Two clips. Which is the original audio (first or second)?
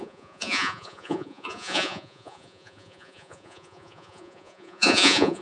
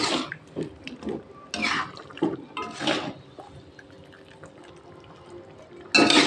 second